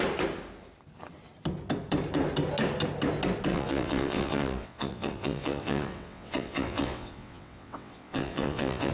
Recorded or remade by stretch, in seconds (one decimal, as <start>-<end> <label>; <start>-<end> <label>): 0.0-3.5 recorded; 3.5-8.9 remade